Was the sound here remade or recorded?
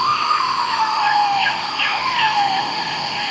remade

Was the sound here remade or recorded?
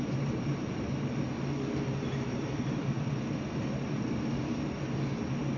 recorded